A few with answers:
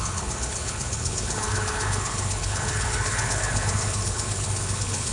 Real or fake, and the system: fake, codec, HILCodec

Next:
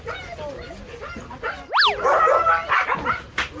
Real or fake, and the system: real